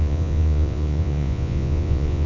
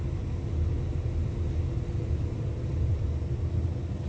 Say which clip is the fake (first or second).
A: first